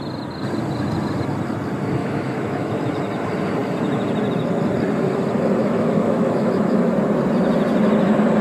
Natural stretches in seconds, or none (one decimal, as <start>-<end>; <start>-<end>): 0.0-2.0; 2.8-5.6; 6.9-8.4